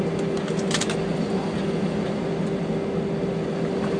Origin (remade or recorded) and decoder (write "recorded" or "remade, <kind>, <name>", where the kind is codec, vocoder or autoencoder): recorded